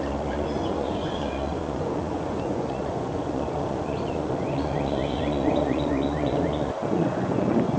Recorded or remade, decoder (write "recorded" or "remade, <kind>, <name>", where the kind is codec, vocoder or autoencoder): remade, vocoder, Vocos